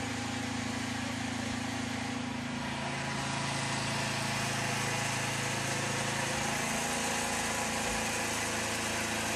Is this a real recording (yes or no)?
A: yes